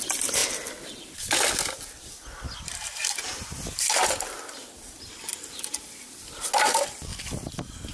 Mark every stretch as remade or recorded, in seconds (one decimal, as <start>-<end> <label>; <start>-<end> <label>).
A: 0.0-7.9 recorded